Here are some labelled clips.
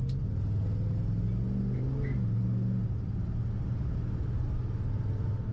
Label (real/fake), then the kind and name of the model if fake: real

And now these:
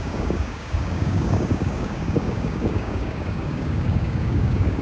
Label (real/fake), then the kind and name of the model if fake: fake, codec, DAC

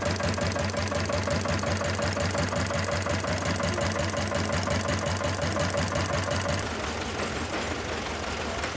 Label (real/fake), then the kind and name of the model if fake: real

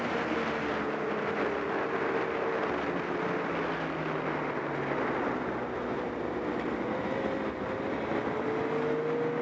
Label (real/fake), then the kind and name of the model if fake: real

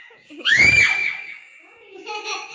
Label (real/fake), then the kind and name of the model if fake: fake, codec, DAC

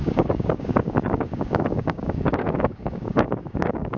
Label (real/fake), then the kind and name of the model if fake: fake, codec, DAC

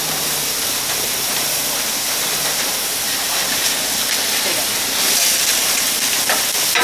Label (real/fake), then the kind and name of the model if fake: real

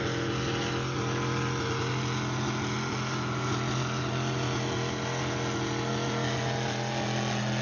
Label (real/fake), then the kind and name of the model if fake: real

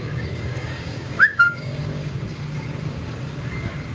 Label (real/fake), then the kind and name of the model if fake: fake, codec, DAC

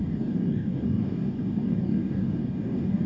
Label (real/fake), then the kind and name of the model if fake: fake, codec, DAC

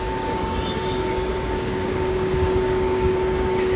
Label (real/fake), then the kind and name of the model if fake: fake, codec, DAC